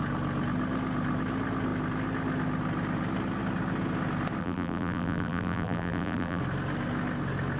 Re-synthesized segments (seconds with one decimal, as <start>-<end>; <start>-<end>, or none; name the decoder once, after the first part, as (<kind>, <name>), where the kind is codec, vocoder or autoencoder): 4.4-6.4 (vocoder, BigVGAN v2)